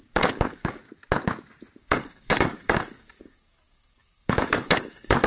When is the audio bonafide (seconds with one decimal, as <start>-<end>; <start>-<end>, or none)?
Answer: 0.8-1.8